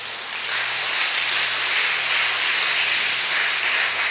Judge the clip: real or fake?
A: real